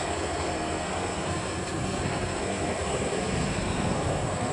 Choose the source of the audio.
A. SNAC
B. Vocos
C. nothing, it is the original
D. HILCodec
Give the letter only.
A